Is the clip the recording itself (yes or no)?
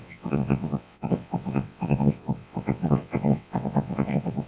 no